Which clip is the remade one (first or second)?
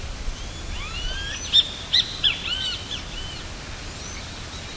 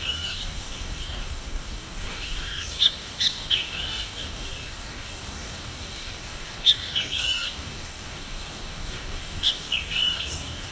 second